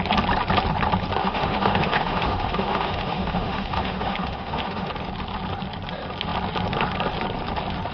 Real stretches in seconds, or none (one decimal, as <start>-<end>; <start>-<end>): 0.0-1.2; 4.9-7.9

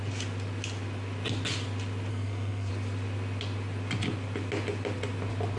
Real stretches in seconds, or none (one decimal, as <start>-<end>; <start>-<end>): 0.0-2.1; 2.7-5.6

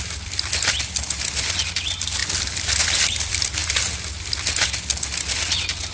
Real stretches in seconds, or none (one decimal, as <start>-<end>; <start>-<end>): 0.0-5.9

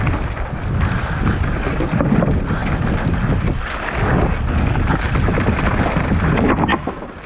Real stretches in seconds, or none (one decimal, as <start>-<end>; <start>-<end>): 0.0-7.3